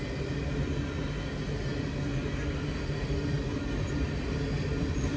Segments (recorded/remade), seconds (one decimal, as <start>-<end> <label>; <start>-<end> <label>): 0.0-5.2 recorded